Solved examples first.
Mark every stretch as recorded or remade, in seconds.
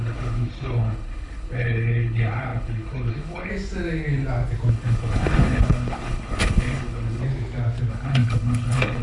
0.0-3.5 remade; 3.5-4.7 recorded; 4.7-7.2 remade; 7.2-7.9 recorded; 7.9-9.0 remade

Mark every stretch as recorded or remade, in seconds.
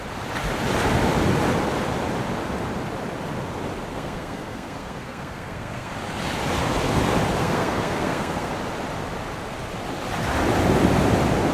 0.0-3.9 recorded; 3.9-5.9 remade; 5.9-7.4 recorded; 7.4-8.5 remade; 8.5-11.5 recorded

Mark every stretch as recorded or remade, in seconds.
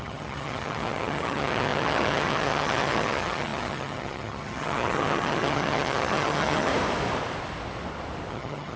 0.0-6.7 remade; 6.7-8.3 recorded; 8.3-8.8 remade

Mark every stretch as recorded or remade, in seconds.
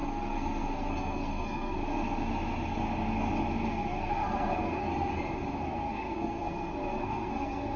0.0-1.8 remade; 1.8-3.7 recorded; 3.7-4.9 remade; 4.9-5.6 recorded; 5.6-7.8 remade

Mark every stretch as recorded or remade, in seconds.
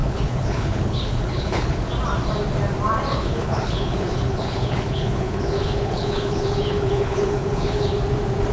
0.0-1.8 remade; 1.8-3.1 recorded; 3.1-7.9 remade; 7.9-8.5 recorded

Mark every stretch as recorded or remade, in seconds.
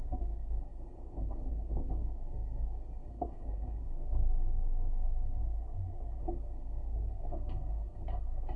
0.0-5.4 remade; 5.4-6.2 recorded; 6.2-8.6 remade